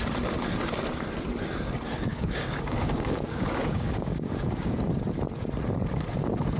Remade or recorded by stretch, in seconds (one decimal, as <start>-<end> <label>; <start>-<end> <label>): 0.0-2.1 recorded; 2.1-4.8 remade; 4.8-6.6 recorded